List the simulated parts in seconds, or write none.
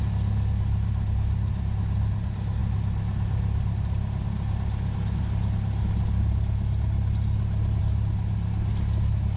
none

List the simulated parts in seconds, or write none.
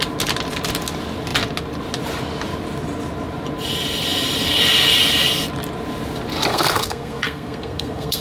6.5-8.2 (codec, SNAC)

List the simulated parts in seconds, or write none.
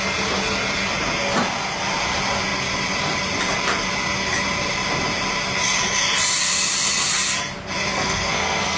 7.9-8.8 (codec, SNAC)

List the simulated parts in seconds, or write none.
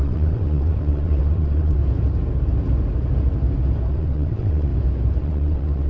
0.0-1.8 (vocoder, WaveNeXt); 3.9-4.7; 5.2-5.9